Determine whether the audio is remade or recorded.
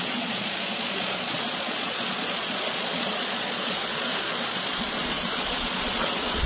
remade